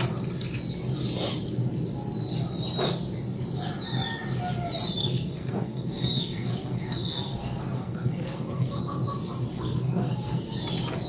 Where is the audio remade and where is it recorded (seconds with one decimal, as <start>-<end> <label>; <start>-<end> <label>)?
0.0-5.0 recorded; 5.0-8.8 remade; 8.8-9.5 recorded; 9.5-10.4 remade; 10.4-11.1 recorded